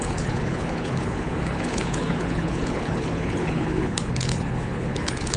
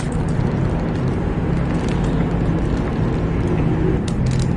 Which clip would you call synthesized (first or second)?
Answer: first